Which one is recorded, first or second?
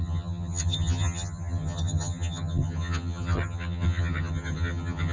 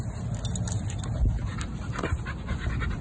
second